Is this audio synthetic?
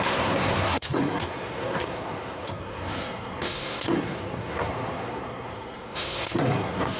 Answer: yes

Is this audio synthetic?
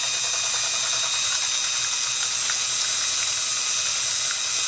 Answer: no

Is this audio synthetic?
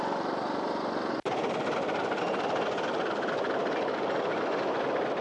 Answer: no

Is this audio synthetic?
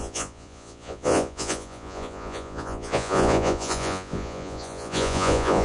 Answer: yes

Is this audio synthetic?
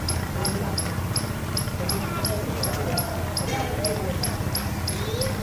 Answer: no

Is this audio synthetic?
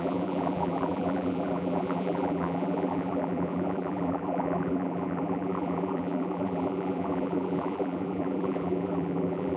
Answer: yes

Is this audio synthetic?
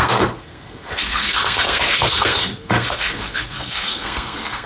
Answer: yes